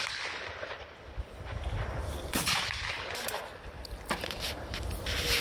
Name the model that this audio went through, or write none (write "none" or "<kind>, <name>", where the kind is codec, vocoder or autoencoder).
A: vocoder, BigVGAN v2